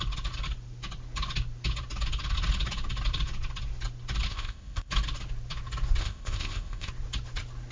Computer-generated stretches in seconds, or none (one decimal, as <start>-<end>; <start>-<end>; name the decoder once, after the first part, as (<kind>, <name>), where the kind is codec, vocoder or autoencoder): 4.3-4.9 (codec, ZipCodec); 6.0-6.9

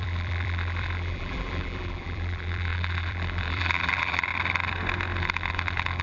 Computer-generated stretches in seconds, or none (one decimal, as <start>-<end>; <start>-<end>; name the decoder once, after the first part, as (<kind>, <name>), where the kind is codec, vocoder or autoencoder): 0.0-4.3 (vocoder, BigVGAN v2); 5.2-6.0

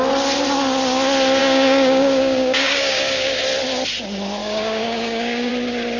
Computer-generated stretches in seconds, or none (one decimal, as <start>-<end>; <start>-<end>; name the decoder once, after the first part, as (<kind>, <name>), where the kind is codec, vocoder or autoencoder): 1.4-3.4 (codec, DAC); 4.4-5.5

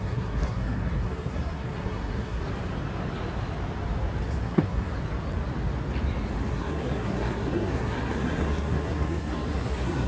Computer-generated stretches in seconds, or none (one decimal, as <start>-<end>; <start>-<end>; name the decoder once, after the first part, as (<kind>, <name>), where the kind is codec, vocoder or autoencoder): 0.0-2.4 (codec, SNAC); 4.4-4.9; 6.5-10.1

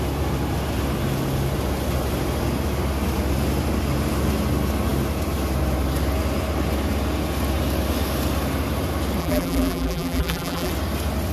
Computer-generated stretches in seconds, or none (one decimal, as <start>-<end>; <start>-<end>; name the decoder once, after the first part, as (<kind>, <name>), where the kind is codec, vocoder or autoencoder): 9.2-10.7 (vocoder, BigVGAN v2)

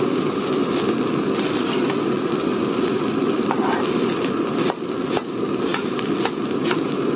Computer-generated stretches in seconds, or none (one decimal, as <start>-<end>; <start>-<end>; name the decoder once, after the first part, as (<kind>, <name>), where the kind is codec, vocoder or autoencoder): none

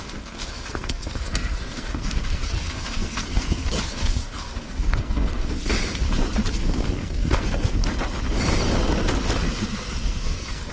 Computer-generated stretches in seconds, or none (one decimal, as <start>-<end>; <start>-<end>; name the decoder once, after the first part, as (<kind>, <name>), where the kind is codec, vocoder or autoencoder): 0.0-5.6 (codec, SNAC); 6.5-7.8; 10.0-10.7